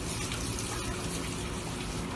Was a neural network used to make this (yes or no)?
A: no